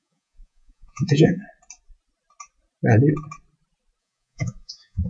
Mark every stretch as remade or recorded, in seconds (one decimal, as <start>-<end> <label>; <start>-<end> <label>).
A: 0.0-1.4 remade; 1.4-4.0 recorded; 4.0-5.1 remade